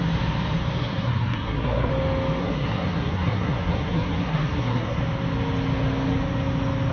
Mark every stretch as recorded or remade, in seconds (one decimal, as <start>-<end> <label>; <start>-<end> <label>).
0.0-0.8 recorded; 0.8-1.9 remade; 1.9-2.4 recorded; 2.4-5.0 remade; 5.0-6.9 recorded